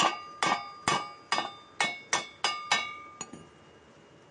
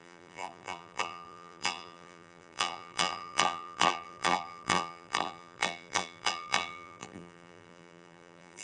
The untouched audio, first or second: first